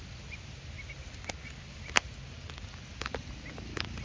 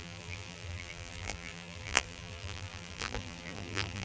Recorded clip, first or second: first